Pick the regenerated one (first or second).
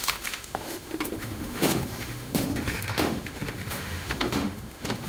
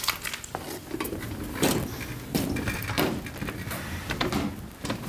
first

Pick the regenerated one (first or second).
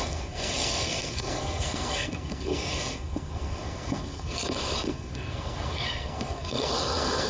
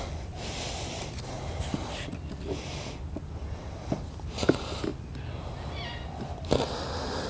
first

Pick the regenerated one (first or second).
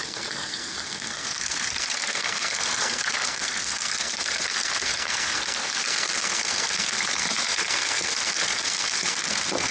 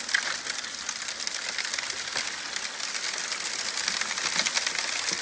first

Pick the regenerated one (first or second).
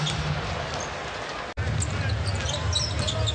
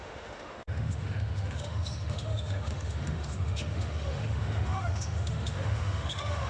second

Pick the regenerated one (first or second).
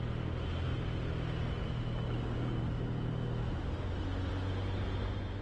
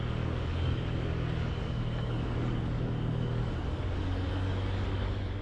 second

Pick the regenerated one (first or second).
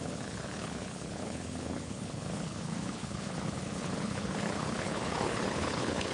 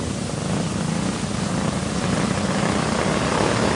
first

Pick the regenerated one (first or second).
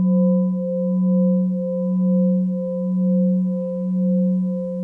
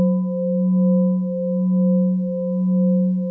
second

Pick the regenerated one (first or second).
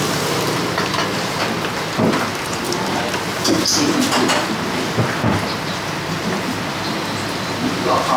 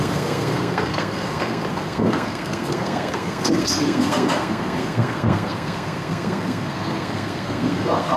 second